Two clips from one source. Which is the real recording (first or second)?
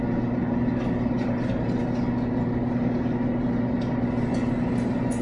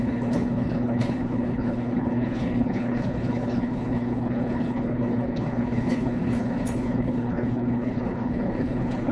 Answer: first